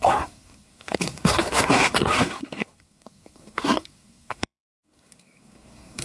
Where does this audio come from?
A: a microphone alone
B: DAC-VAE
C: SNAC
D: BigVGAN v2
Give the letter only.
C